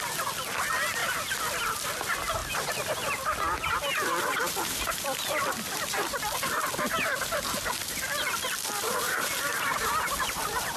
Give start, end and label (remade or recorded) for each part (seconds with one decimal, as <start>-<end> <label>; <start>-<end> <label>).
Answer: 0.0-2.4 recorded; 2.4-3.7 remade; 3.7-10.8 recorded